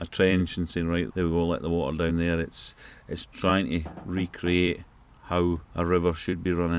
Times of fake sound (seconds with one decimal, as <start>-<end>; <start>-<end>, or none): 0.0-3.5; 4.2-6.8